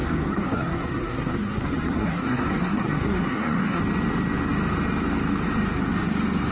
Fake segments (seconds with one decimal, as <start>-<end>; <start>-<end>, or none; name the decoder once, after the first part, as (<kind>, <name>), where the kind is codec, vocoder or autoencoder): 0.0-3.8 (codec, SNAC)